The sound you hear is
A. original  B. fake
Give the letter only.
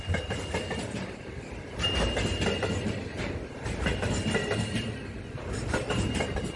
A